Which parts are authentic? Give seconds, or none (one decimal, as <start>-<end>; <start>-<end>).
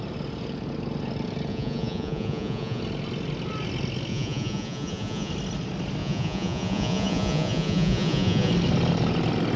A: 0.0-1.5; 2.8-4.1; 5.3-6.0; 8.5-9.6